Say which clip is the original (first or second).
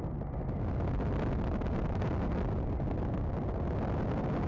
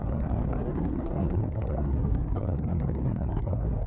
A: first